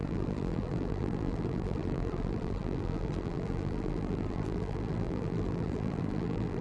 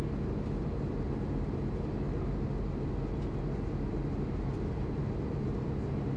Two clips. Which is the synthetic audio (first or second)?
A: first